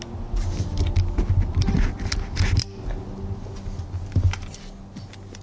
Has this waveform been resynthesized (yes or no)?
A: no